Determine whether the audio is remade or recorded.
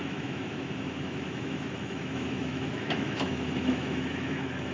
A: remade